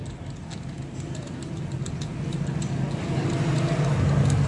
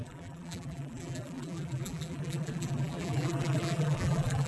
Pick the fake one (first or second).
second